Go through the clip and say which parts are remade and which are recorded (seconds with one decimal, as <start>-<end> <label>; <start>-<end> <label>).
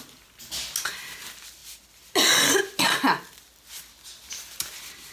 0.0-5.1 recorded